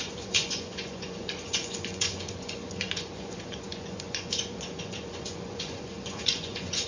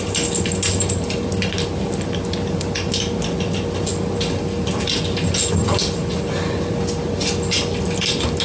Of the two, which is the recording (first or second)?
second